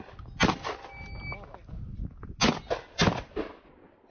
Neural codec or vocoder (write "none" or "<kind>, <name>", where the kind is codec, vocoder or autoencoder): none